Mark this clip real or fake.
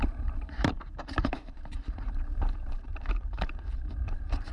fake